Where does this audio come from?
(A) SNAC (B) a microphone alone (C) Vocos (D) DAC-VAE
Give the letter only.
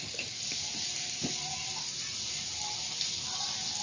B